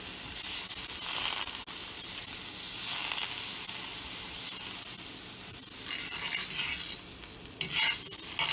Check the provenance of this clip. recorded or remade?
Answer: recorded